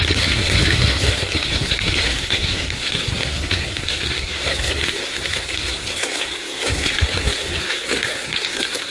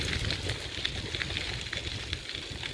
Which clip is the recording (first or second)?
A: second